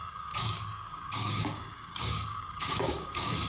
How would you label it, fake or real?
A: fake